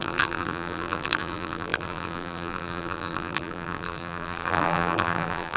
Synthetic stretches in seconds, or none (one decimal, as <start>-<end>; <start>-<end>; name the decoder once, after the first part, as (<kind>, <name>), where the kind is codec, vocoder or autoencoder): 0.0-5.6 (vocoder, BigVGAN v2)